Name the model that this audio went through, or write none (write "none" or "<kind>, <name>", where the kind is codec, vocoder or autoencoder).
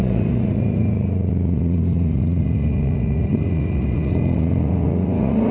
vocoder, Vocos